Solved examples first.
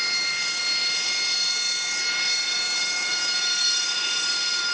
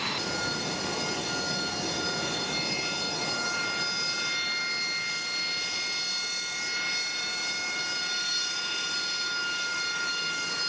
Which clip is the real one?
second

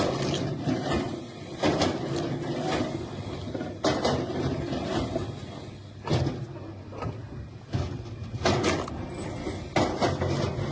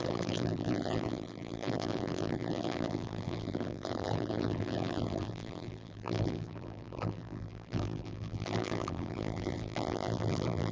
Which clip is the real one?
first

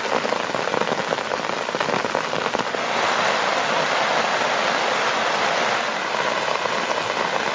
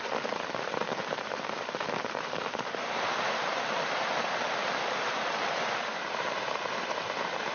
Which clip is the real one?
first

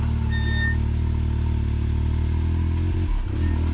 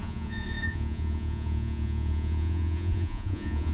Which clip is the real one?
first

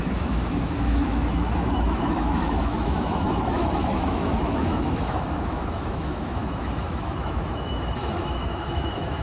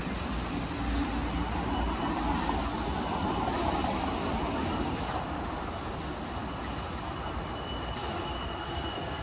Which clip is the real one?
second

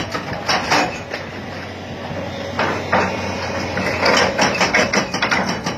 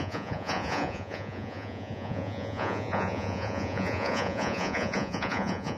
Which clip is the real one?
first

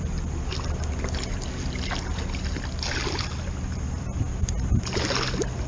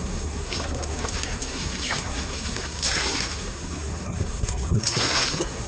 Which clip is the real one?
first